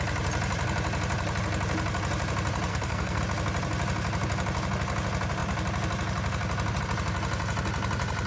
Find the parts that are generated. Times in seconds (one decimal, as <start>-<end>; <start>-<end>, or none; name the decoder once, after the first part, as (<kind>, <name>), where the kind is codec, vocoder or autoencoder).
2.7-3.2 (codec, SNAC)